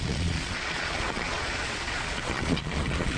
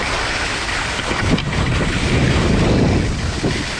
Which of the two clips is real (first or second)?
second